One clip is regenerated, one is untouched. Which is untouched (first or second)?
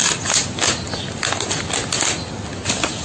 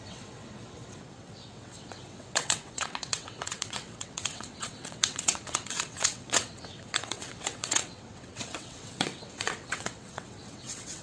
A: first